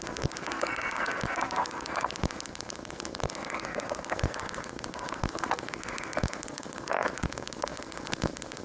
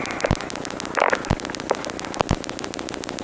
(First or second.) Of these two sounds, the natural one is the second